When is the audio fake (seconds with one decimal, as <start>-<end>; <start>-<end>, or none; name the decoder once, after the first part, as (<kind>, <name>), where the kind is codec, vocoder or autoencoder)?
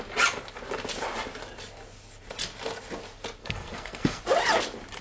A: 3.4-4.2 (codec, SNAC)